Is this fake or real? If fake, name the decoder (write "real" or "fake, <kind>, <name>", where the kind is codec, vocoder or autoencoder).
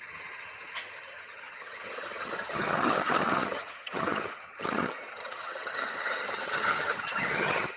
fake, vocoder, HiFi-GAN